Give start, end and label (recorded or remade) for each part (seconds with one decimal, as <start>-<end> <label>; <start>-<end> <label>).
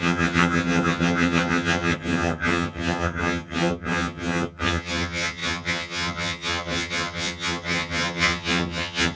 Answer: 0.0-9.2 remade